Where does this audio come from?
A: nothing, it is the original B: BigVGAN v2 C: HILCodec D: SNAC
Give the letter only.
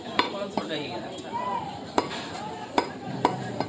B